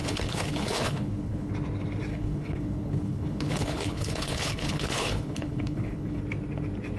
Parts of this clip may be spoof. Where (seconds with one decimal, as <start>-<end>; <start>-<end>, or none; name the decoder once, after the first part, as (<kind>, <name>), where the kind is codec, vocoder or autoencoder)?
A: 0.0-1.5 (codec, HILCodec); 2.1-6.2